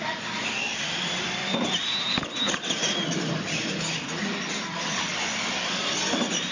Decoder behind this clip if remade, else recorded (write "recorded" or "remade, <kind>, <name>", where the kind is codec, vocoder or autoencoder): recorded